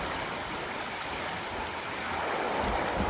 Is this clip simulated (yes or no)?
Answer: no